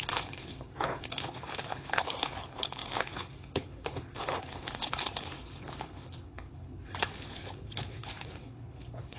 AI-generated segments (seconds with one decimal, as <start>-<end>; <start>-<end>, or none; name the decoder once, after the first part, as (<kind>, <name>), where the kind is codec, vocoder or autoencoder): 0.0-9.2 (codec, HILCodec)